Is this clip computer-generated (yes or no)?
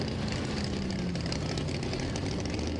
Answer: no